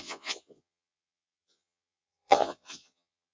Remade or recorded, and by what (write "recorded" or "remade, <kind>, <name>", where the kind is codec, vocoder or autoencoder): remade, vocoder, Vocos